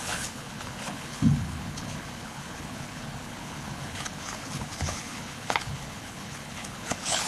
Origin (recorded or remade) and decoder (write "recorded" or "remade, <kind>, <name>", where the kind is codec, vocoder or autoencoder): remade, codec, HILCodec